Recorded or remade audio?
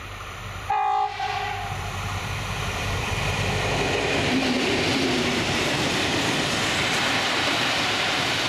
remade